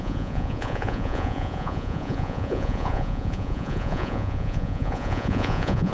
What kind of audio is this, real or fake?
fake